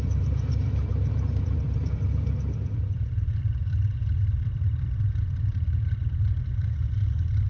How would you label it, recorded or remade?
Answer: remade